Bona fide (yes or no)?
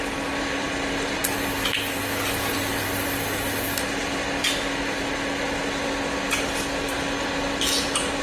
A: yes